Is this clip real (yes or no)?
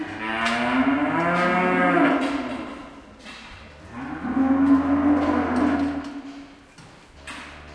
yes